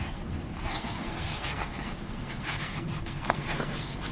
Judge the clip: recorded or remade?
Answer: remade